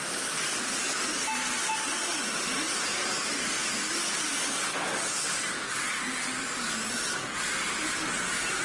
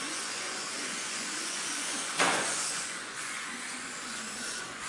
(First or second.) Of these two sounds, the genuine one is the first